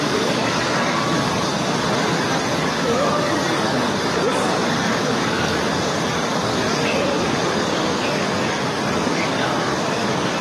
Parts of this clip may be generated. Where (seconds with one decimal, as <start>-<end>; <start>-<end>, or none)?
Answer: 0.0-1.5; 2.1-10.4